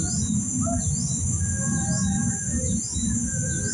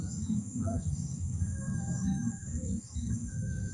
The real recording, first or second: first